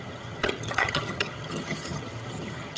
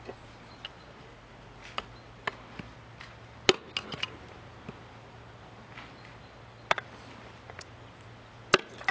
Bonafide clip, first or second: second